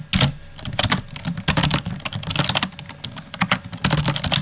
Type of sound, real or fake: real